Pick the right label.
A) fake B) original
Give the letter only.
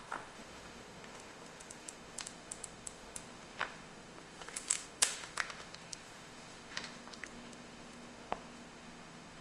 A